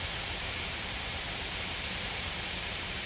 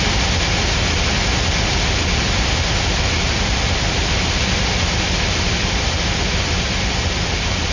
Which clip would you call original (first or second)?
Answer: second